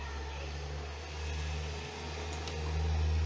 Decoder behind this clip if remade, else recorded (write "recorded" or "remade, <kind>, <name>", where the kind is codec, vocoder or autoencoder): recorded